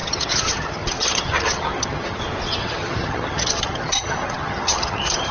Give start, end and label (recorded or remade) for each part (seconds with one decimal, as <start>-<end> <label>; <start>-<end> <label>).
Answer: 0.0-2.2 remade; 2.2-2.6 recorded; 2.6-5.3 remade